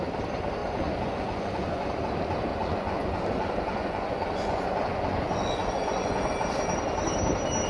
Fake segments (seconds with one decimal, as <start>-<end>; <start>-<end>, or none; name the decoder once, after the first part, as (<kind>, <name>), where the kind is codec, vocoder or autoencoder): 0.6-2.0 (vocoder, Vocos); 2.5-6.3